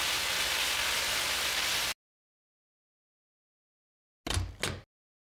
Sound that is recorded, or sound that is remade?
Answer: recorded